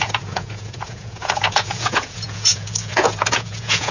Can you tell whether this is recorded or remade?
remade